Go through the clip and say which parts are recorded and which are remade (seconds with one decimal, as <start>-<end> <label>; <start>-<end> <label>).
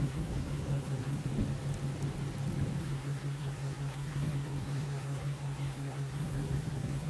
0.0-1.3 remade; 1.3-2.8 recorded; 2.8-7.1 remade